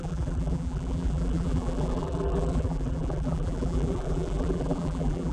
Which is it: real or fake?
fake